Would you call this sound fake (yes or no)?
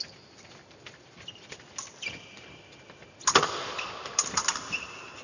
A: yes